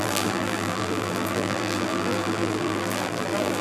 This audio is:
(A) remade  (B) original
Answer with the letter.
A